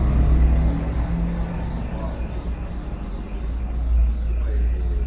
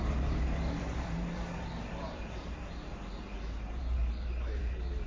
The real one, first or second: first